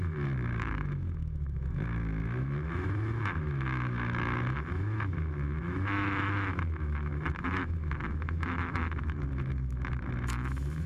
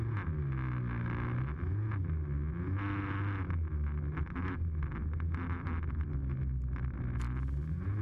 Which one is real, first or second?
second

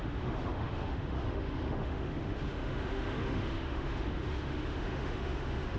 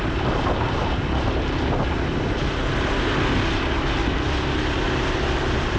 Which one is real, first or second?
second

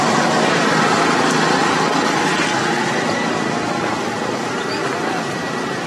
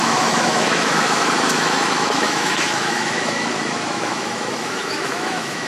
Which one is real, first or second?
first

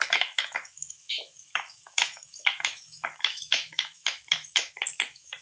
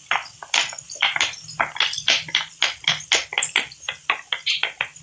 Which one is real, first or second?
second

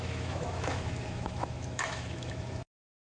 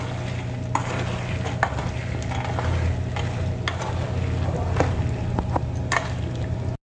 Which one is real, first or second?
second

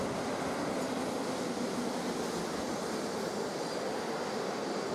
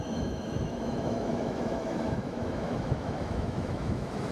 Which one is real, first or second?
first